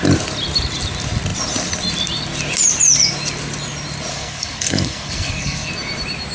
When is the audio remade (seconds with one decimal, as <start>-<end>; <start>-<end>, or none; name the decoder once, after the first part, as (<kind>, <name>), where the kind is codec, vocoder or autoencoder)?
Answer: 4.1-5.7 (codec, SNAC)